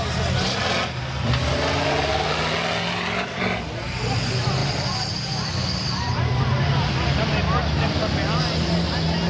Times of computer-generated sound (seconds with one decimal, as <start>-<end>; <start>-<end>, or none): none